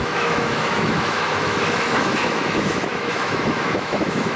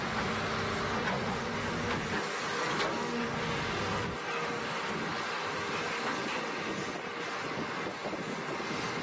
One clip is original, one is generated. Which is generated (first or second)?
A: first